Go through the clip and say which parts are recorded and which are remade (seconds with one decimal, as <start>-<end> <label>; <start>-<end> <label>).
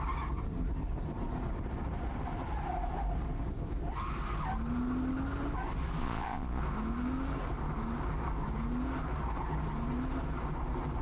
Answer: 0.0-6.0 recorded; 6.0-6.6 remade; 6.6-11.0 recorded